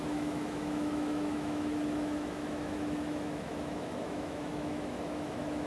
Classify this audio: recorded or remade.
remade